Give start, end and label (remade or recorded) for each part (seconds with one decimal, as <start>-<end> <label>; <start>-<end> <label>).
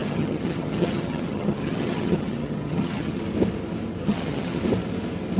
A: 0.0-3.2 remade; 3.2-4.0 recorded; 4.0-4.6 remade; 4.6-5.4 recorded